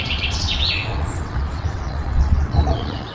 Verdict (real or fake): fake